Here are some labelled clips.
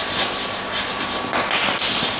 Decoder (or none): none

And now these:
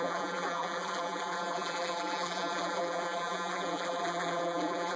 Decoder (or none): vocoder, BigVGAN v2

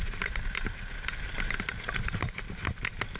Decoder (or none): none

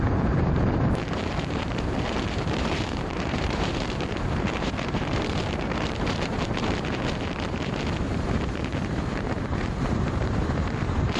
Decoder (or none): vocoder, BigVGAN v2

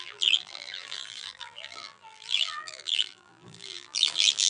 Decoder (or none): vocoder, BigVGAN v2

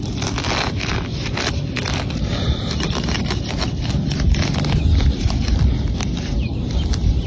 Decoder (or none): vocoder, BigVGAN v2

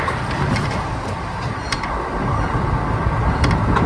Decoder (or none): vocoder, BigVGAN v2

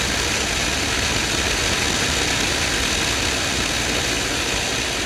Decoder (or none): none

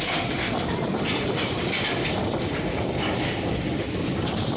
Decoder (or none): none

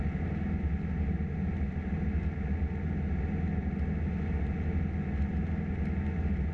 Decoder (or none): none